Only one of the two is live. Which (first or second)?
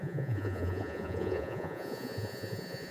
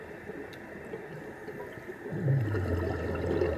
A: second